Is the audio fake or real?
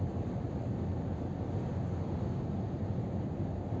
real